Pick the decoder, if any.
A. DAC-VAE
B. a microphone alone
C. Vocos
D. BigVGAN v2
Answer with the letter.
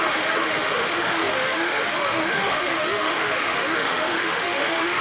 A